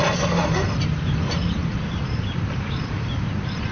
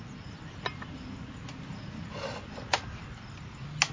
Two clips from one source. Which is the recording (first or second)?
second